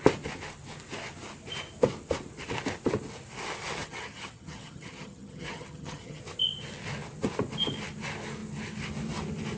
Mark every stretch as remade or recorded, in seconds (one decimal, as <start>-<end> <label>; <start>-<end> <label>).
0.0-3.8 recorded; 3.8-6.2 remade; 6.2-9.6 recorded